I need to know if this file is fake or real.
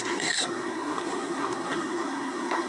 fake